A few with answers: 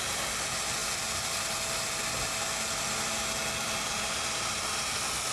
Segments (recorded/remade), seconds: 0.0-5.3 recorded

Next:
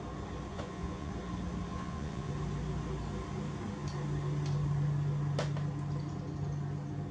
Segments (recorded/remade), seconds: 0.0-0.5 recorded; 0.5-1.1 remade; 1.1-1.7 recorded; 1.7-2.3 remade; 2.3-7.1 recorded

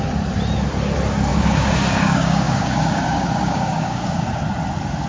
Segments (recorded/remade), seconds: 0.0-1.3 recorded; 1.3-4.4 remade; 4.4-5.1 recorded

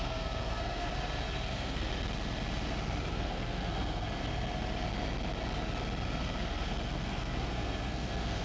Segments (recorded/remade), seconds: 0.0-0.9 remade; 0.9-1.5 recorded; 1.5-1.9 remade; 1.9-3.1 recorded; 3.1-4.2 remade; 4.2-6.2 recorded; 6.2-8.4 remade

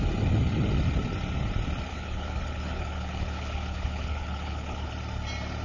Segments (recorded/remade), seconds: 0.0-1.9 recorded; 1.9-4.9 remade; 4.9-5.6 recorded

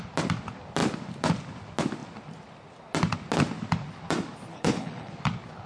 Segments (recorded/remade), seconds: 0.0-4.5 recorded; 4.5-5.1 remade; 5.1-5.7 recorded

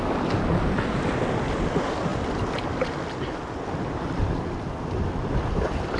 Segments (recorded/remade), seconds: 0.0-6.0 recorded

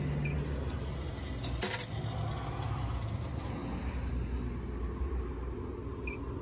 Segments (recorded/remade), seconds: 0.0-6.4 recorded